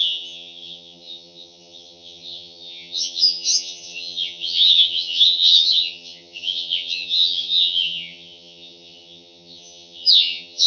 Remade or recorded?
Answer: remade